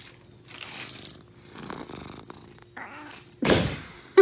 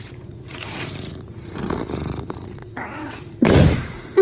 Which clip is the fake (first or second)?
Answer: second